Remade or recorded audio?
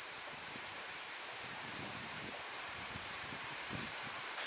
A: remade